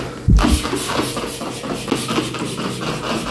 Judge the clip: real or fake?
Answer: real